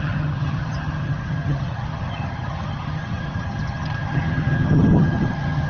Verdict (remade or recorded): remade